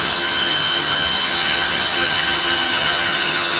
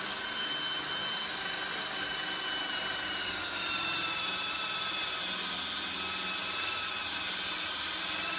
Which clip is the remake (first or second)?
first